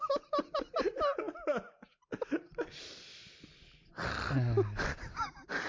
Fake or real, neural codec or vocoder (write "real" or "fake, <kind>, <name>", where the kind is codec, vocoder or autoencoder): real